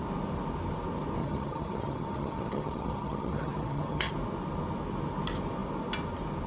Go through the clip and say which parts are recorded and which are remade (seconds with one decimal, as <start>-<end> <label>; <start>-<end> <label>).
0.0-1.2 recorded; 1.2-4.1 remade; 4.1-6.5 recorded